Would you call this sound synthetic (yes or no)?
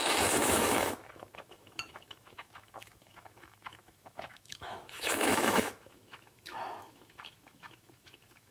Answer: yes